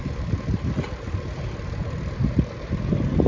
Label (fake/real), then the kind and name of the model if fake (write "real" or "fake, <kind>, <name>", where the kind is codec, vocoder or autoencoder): real